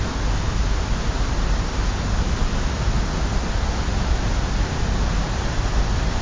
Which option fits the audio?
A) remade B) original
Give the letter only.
B